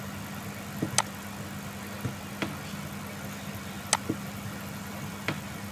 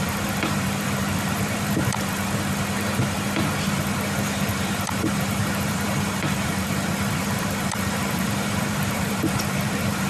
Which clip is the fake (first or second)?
second